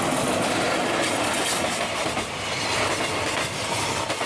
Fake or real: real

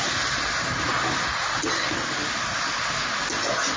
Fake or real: real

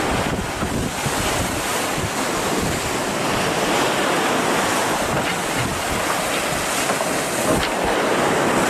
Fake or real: real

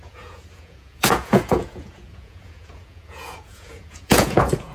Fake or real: fake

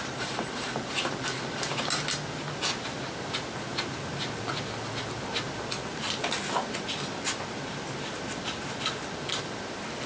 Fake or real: real